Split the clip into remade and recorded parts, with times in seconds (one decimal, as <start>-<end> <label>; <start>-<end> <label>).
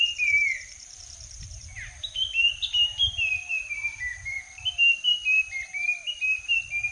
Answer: 0.0-1.7 remade; 1.7-2.5 recorded; 2.5-4.1 remade; 4.1-5.5 recorded; 5.5-5.9 remade; 5.9-6.9 recorded